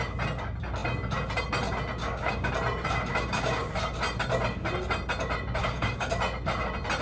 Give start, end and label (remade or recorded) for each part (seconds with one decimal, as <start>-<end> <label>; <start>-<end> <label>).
0.0-2.0 recorded; 2.0-2.5 remade; 2.5-3.1 recorded; 3.1-3.7 remade; 3.7-5.6 recorded; 5.6-6.1 remade; 6.1-7.0 recorded

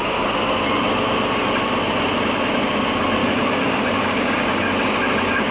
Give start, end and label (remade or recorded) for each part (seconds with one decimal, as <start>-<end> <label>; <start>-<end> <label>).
0.0-3.2 recorded; 3.2-4.6 remade; 4.6-5.5 recorded

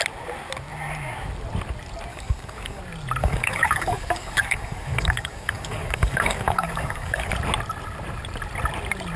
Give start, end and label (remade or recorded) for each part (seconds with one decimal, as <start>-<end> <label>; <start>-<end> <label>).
0.0-2.1 recorded; 2.1-2.8 remade; 2.8-3.2 recorded; 3.2-7.3 remade; 7.3-9.2 recorded